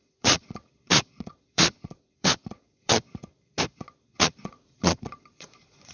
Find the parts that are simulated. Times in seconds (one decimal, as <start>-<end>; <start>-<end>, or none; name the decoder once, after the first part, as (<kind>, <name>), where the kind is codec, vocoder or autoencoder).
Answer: 0.0-3.1 (vocoder, Vocos); 3.8-5.9